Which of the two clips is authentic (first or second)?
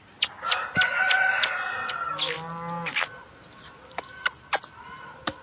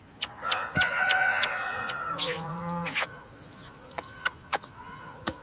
first